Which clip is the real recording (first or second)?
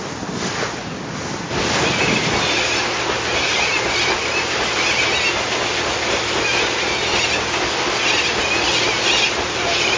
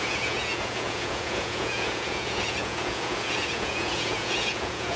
first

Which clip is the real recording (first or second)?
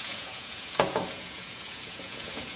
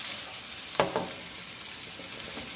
second